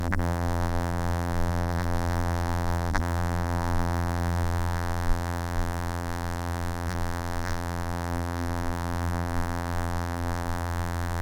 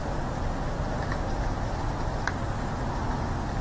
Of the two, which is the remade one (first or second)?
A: first